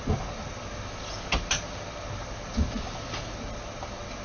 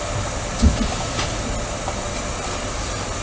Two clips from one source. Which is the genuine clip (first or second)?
first